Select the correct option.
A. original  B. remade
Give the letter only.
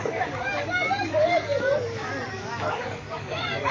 B